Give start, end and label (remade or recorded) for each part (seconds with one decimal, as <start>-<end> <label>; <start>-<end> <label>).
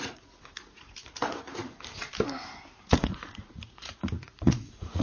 0.0-1.5 remade; 1.5-2.8 recorded; 2.8-5.0 remade